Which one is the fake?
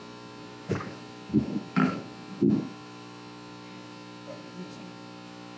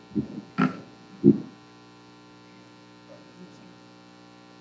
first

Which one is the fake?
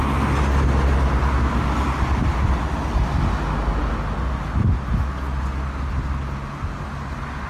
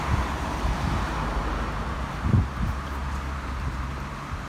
second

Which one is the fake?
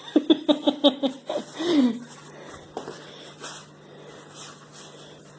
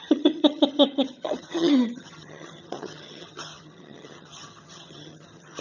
second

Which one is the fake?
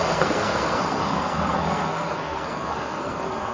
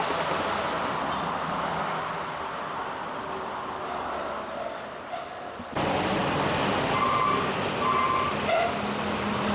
first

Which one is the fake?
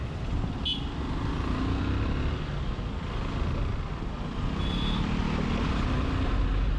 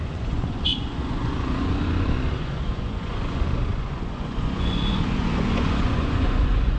second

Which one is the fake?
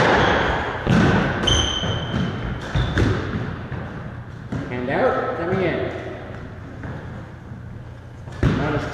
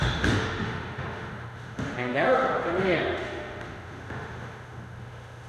second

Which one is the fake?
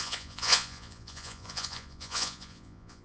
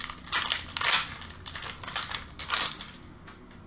first